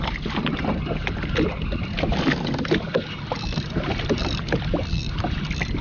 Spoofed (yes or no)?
no